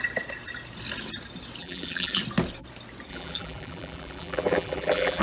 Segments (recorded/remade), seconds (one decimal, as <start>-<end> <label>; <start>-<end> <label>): 0.0-1.6 recorded; 1.6-2.2 remade; 2.2-3.1 recorded; 3.1-5.2 remade